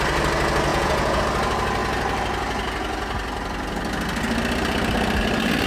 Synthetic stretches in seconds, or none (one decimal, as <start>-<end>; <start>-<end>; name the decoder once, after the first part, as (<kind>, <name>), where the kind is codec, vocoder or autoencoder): 0.7-1.2 (vocoder, Vocos)